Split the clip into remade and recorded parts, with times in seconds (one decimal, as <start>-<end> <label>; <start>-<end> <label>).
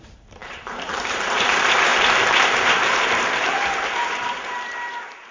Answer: 0.0-5.3 remade